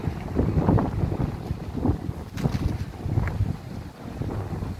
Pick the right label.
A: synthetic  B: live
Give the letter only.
B